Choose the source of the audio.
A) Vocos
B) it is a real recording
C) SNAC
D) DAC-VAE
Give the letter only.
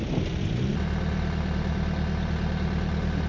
B